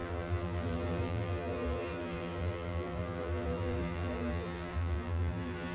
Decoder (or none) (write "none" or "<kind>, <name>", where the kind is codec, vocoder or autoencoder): vocoder, BigVGAN v2